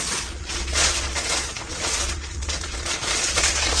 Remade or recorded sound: remade